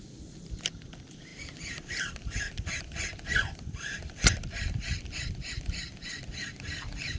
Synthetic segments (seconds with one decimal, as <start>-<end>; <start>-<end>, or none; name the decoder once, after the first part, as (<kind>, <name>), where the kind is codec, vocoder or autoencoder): none